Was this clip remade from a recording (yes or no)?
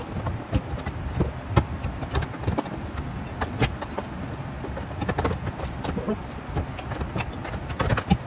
no